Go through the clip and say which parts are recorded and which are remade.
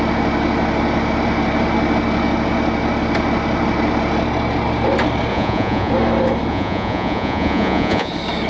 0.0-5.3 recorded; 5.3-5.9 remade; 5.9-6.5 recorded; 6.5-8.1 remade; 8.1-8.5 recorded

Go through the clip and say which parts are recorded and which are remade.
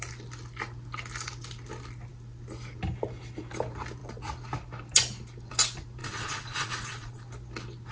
0.0-6.0 recorded; 6.0-7.2 remade; 7.2-7.9 recorded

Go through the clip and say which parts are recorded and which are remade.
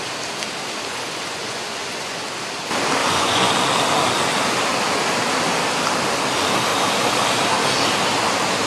0.0-0.9 recorded; 0.9-2.2 remade; 2.2-3.0 recorded; 3.0-3.5 remade; 3.5-8.7 recorded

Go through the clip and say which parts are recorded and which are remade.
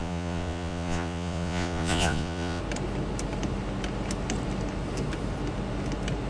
0.0-2.6 remade; 2.6-6.3 recorded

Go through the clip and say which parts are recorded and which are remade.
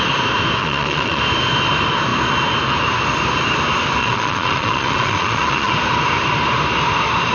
0.0-0.6 recorded; 0.6-1.2 remade; 1.2-4.0 recorded; 4.0-5.7 remade; 5.7-7.3 recorded